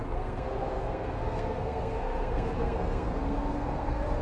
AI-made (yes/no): yes